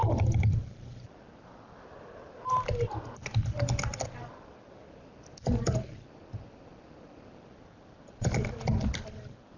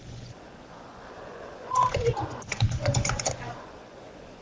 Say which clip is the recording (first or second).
first